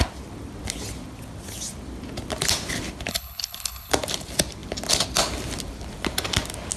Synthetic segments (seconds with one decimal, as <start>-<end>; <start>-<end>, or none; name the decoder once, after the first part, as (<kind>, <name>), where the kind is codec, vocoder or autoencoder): 3.1-3.9 (codec, HILCodec)